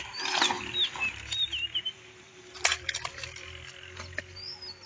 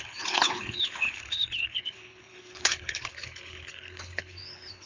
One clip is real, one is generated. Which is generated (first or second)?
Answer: second